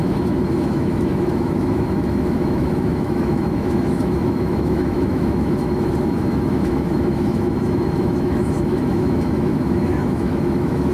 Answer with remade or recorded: remade